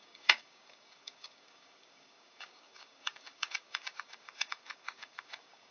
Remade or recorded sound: remade